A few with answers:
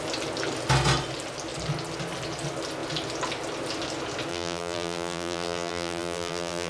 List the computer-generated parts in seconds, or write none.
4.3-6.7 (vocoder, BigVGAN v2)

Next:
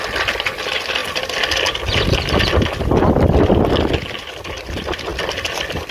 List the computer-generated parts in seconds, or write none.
none

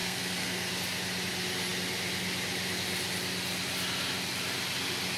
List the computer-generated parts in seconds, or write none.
0.0-0.7 (codec, SNAC)